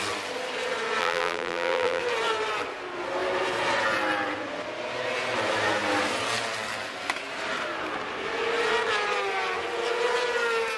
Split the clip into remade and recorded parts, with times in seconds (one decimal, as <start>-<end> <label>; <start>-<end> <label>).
0.0-1.0 recorded; 1.0-2.0 remade; 2.0-10.8 recorded